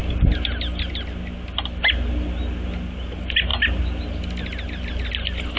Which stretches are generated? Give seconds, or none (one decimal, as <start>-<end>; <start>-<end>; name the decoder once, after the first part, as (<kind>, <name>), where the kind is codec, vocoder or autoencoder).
none